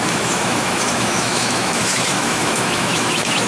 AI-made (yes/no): yes